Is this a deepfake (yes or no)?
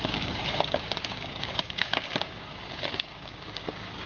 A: yes